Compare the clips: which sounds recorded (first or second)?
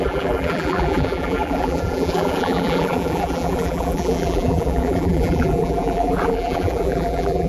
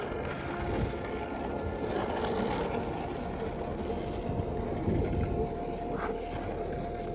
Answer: second